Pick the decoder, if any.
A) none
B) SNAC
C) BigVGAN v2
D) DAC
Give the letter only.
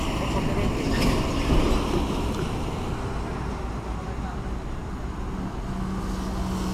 A